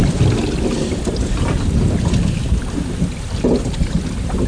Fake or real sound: real